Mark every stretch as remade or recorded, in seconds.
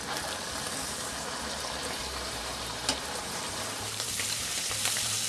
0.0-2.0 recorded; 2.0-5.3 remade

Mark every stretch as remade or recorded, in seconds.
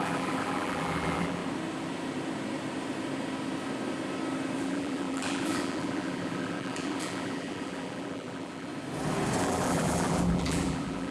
0.0-1.4 remade; 1.4-4.6 recorded; 4.6-8.7 remade; 8.7-9.4 recorded; 9.4-11.1 remade